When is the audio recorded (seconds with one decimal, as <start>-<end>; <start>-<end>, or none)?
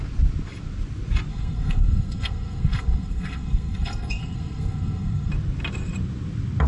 0.0-1.3; 5.3-6.7